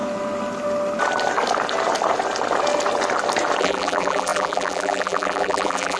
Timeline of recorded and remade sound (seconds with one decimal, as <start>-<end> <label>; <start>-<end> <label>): 0.0-3.6 recorded; 3.6-6.0 remade